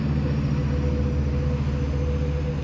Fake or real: real